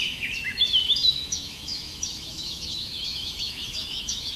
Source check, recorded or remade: remade